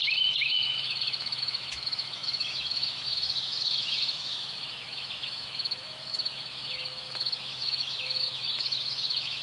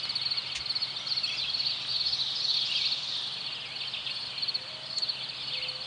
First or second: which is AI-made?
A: first